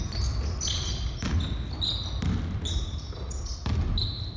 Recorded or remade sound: recorded